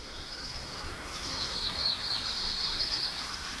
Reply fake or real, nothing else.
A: fake